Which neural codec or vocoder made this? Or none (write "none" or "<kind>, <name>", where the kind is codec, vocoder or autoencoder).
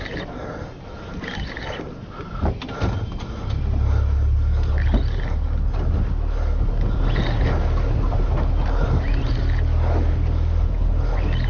none